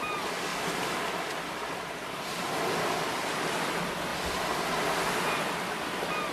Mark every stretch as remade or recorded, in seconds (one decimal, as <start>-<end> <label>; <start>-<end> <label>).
0.0-0.5 recorded; 0.5-1.9 remade; 1.9-6.3 recorded